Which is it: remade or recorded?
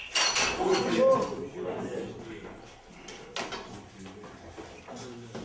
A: recorded